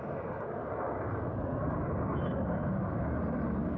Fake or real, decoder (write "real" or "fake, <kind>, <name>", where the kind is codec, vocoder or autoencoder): real